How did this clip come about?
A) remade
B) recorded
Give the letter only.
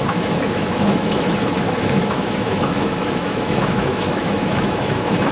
A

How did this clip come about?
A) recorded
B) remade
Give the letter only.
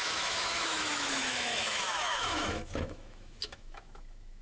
B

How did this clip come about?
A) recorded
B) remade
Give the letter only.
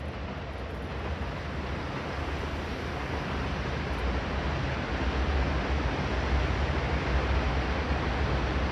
A